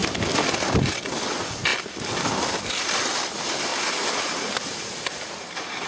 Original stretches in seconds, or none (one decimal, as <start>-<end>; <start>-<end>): 0.0-5.9